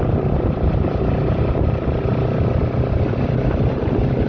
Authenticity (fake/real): real